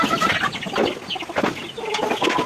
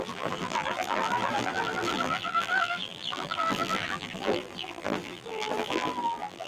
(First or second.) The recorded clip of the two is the first